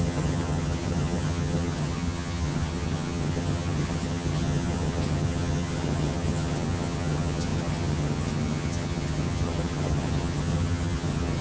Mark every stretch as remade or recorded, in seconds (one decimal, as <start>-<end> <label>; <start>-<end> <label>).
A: 0.0-11.4 remade